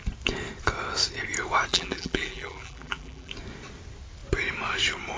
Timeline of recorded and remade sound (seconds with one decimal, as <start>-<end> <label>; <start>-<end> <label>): 0.0-1.7 recorded; 1.7-3.3 remade; 3.3-5.2 recorded